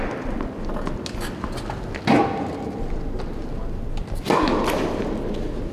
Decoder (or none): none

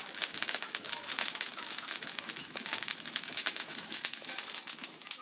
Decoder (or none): autoencoder, DAC-VAE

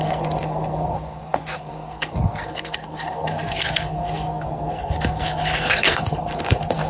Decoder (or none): codec, SNAC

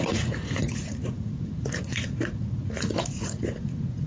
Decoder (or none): vocoder, Vocos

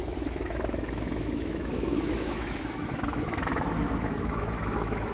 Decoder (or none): autoencoder, DAC-VAE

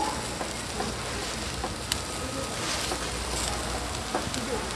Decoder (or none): none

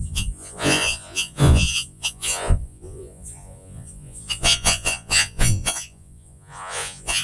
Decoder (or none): vocoder, Vocos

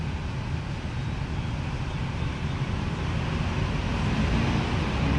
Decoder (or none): none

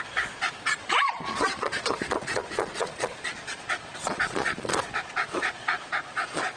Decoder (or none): vocoder, Vocos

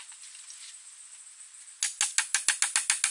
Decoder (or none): none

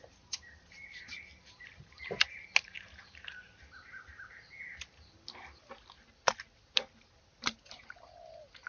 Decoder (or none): none